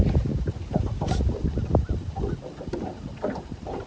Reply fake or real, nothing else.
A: real